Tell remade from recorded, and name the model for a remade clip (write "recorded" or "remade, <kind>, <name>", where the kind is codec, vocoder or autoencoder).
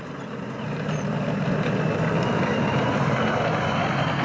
recorded